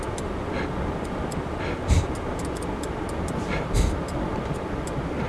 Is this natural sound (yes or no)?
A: yes